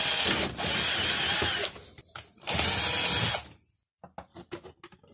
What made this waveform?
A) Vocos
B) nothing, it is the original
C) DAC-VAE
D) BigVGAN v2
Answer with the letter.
B